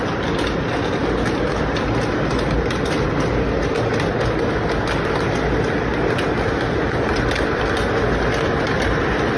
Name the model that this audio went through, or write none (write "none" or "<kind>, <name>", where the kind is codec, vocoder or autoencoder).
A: none